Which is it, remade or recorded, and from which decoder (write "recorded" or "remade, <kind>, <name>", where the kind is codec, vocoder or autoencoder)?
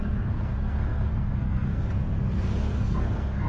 remade, codec, SNAC